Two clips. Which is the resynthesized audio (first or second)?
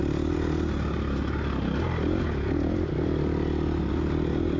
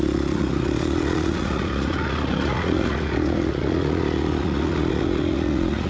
second